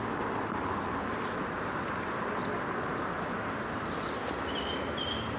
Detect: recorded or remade recorded